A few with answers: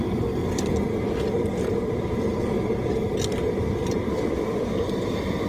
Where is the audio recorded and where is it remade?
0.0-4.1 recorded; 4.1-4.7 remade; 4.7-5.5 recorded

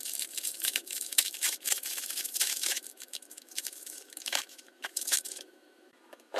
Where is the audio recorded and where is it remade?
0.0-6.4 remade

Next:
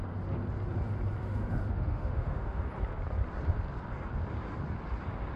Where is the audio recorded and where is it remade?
0.0-1.2 recorded; 1.2-2.6 remade; 2.6-5.4 recorded

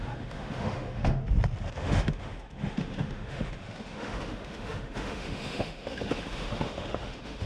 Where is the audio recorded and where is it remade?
0.0-1.2 remade; 1.2-1.7 recorded; 1.7-7.5 remade

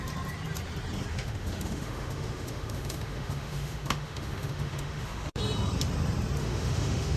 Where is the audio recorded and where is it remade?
0.0-1.1 recorded; 1.1-5.4 remade; 5.4-6.4 recorded; 6.4-7.2 remade